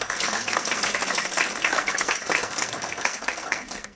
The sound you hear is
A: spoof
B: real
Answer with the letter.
A